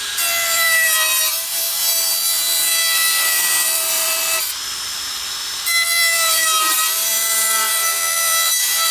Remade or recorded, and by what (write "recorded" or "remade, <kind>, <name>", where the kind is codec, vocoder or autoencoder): remade, vocoder, BigVGAN v2